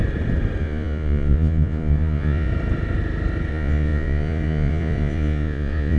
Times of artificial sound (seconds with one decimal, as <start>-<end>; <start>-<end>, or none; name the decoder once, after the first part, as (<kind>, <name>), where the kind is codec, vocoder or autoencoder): 0.6-2.5 (vocoder, Vocos); 3.5-6.0